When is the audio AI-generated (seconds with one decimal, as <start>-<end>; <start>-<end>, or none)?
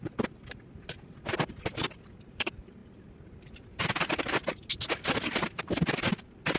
none